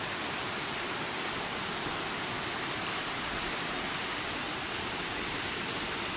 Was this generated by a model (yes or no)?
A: yes